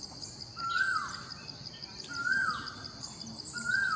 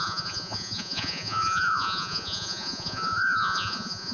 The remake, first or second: second